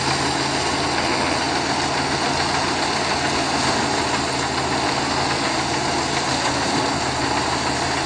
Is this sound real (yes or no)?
yes